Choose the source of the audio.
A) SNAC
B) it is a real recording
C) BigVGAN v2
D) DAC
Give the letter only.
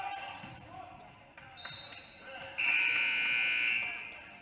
B